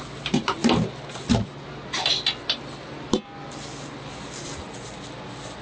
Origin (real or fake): real